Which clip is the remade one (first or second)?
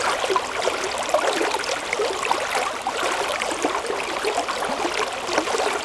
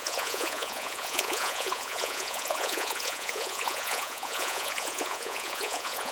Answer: second